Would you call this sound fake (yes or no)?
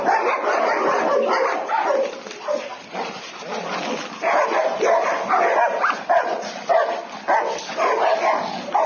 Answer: no